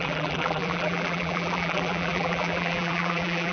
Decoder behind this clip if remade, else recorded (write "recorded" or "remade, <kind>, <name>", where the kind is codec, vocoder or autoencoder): remade, vocoder, BigVGAN v2